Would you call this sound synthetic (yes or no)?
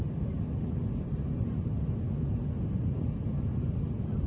no